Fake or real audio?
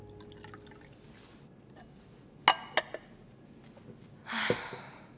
real